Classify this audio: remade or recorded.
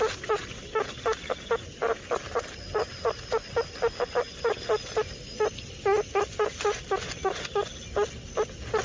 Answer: recorded